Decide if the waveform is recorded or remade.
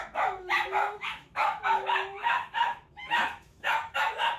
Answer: remade